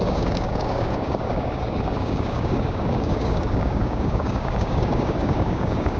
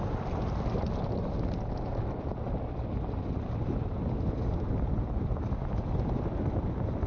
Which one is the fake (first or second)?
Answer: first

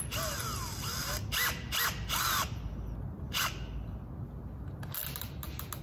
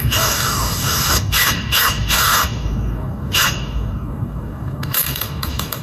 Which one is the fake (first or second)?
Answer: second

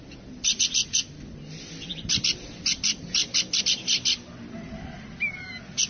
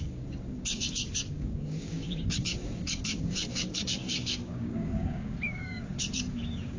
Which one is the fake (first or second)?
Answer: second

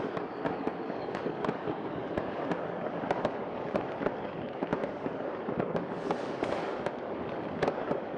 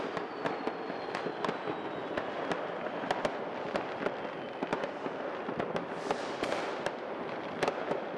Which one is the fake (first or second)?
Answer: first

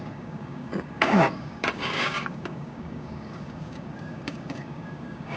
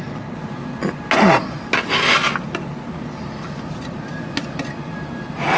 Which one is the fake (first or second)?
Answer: first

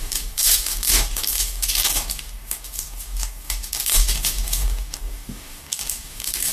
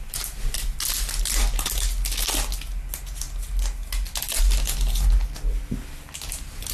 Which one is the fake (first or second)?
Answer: first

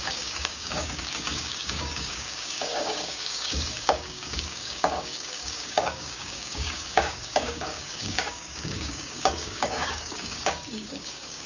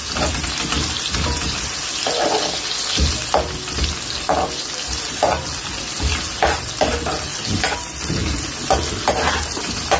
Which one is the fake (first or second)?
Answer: first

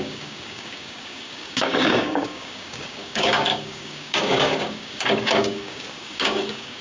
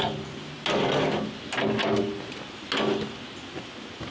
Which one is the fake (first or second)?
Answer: first